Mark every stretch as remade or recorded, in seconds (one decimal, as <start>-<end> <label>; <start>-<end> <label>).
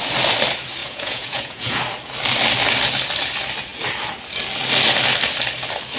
0.0-0.8 recorded; 0.8-1.8 remade; 1.8-6.0 recorded